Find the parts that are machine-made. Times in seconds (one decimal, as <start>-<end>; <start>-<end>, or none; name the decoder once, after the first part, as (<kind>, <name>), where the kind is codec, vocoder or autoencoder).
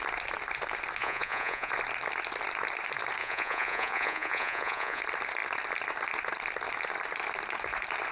1.0-1.7 (vocoder, Vocos); 3.2-5.0